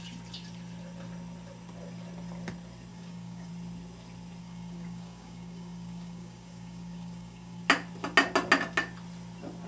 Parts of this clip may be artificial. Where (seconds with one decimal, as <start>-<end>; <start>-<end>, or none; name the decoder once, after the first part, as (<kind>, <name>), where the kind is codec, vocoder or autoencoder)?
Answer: 2.9-3.5 (codec, DAC); 4.4-7.6